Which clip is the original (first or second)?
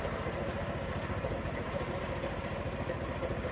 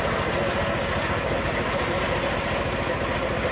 second